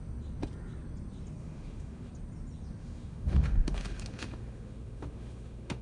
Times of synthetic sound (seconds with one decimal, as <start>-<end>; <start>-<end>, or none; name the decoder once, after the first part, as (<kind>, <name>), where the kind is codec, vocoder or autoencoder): 1.4-2.1 (autoencoder, DAC-VAE); 2.8-5.8